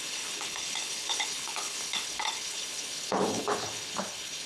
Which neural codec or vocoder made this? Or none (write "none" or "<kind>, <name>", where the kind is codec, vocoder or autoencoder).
codec, HILCodec